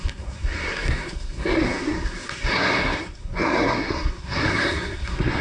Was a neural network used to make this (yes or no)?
yes